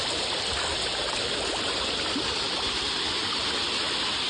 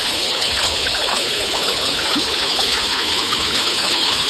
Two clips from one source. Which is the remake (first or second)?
second